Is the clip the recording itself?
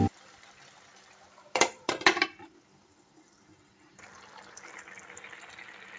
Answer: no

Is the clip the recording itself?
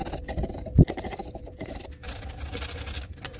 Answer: yes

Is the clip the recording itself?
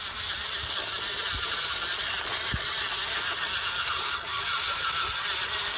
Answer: yes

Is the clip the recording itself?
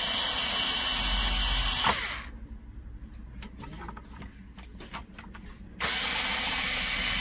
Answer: yes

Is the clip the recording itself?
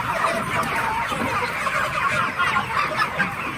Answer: yes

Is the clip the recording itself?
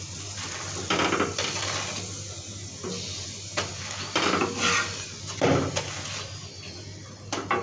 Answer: yes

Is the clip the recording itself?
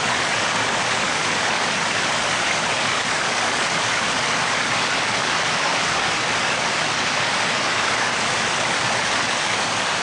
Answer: no